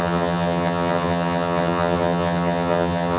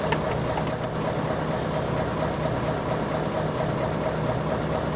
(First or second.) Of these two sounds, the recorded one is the second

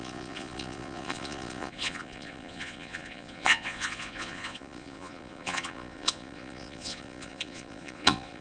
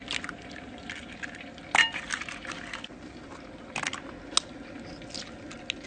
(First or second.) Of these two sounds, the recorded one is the second